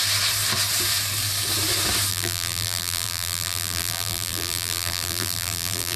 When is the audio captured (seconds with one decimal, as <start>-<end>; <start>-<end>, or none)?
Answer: 0.0-2.1